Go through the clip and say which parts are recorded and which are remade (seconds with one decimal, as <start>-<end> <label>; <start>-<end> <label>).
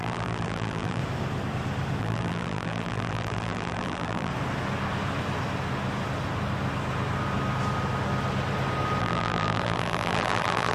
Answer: 0.0-1.0 remade; 1.0-2.0 recorded; 2.0-4.3 remade; 4.3-9.0 recorded; 9.0-10.7 remade